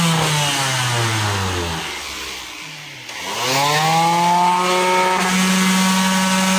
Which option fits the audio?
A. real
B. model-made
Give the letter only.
A